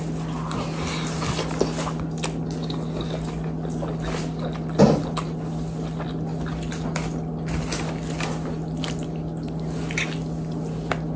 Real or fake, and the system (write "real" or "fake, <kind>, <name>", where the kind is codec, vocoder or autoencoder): real